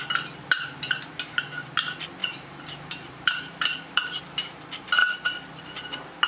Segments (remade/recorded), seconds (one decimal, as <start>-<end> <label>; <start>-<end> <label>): 0.0-2.2 recorded; 2.2-4.2 remade; 4.2-6.3 recorded